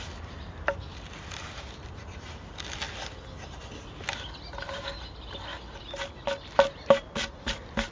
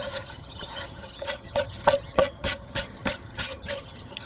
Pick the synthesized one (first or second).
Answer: second